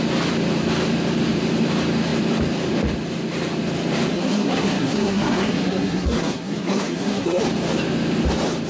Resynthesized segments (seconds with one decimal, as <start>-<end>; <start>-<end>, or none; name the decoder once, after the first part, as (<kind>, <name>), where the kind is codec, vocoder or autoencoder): 4.1-7.4 (codec, SNAC)